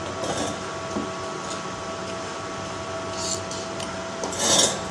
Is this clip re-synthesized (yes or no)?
no